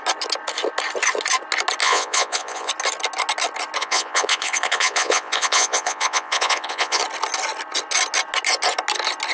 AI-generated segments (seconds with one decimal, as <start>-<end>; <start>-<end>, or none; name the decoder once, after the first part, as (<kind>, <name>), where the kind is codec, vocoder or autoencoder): 1.8-2.7 (vocoder, Vocos); 3.8-7.0